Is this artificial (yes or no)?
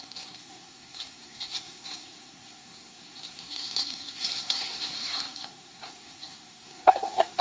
yes